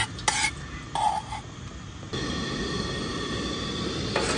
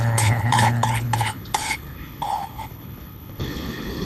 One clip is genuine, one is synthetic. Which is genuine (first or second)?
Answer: first